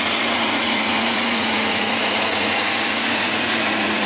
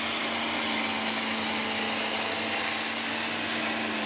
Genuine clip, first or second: second